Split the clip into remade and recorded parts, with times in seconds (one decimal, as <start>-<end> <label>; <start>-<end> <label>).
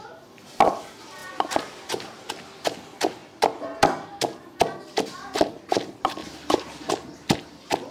0.0-1.2 recorded; 1.2-2.3 remade; 2.3-6.2 recorded; 6.2-6.9 remade; 6.9-7.9 recorded